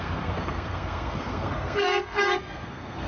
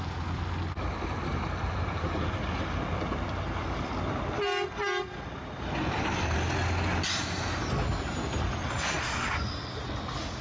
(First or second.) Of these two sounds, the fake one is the first